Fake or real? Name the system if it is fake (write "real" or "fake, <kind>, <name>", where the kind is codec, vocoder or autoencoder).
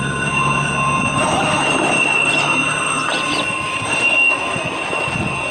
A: real